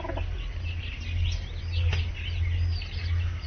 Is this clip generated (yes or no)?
no